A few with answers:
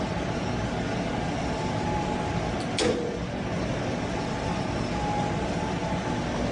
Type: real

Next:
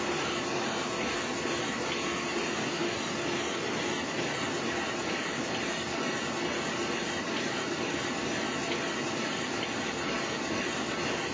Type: real